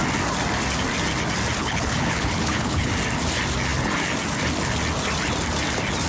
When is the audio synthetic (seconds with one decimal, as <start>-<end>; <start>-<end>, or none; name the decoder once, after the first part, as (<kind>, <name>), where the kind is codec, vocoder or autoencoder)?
1.6-2.9 (codec, HILCodec)